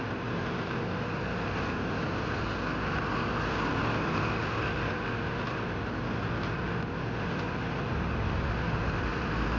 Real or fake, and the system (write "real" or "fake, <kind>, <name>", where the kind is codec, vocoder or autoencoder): real